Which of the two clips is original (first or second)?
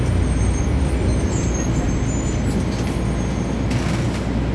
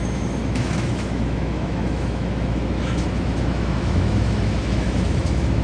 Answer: first